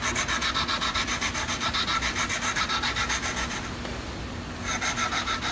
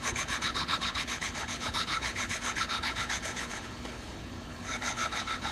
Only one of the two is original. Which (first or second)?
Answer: first